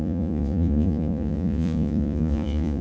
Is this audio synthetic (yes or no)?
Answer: yes